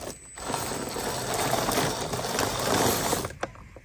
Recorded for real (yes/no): yes